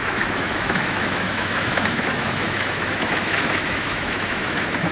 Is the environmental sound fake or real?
fake